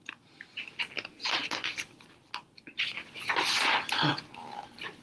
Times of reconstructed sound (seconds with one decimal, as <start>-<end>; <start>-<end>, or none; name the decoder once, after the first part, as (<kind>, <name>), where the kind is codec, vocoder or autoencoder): none